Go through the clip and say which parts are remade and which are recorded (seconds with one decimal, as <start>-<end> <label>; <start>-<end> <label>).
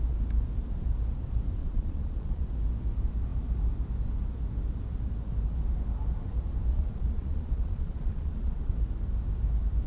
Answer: 0.0-1.6 recorded; 1.6-2.5 remade; 2.5-6.7 recorded; 6.7-8.7 remade; 8.7-9.9 recorded